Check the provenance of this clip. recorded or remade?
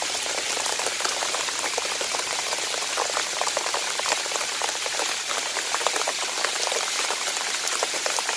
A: remade